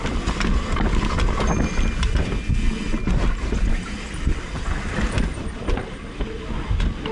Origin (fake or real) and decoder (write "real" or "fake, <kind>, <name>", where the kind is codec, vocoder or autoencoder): real